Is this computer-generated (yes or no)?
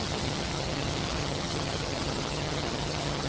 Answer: yes